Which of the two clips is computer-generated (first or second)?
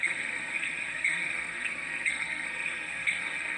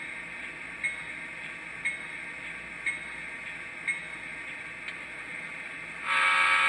first